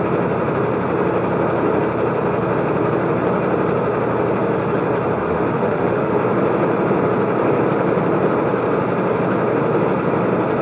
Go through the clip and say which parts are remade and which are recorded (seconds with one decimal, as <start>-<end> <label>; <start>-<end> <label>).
0.0-5.2 recorded; 5.2-6.1 remade; 6.1-10.6 recorded